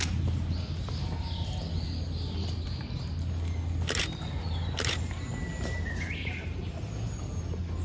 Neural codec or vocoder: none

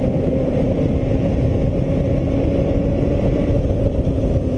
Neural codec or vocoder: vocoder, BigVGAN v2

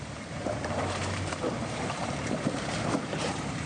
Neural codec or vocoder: vocoder, BigVGAN v2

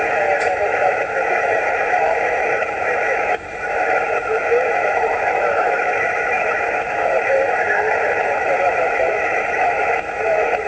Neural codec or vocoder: autoencoder, DAC-VAE